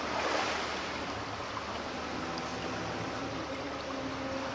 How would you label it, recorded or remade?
recorded